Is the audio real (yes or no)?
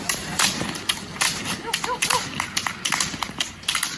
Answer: yes